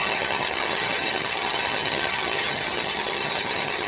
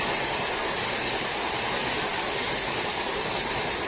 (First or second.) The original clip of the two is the second